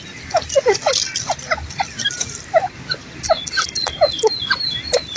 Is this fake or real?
real